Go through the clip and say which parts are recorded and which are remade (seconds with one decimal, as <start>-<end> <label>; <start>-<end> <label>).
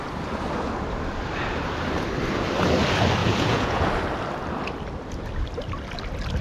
0.0-3.2 recorded; 3.2-3.9 remade; 3.9-6.4 recorded